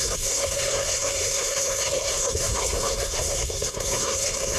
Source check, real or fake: fake